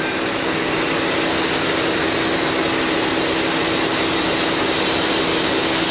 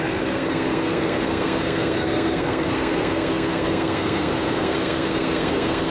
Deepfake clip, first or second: second